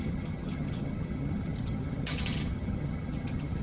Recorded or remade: remade